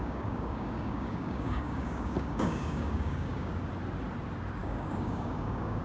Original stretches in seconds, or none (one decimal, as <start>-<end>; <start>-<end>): 3.5-4.6